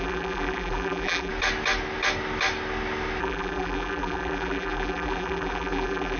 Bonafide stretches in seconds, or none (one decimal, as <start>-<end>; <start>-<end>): 1.3-3.2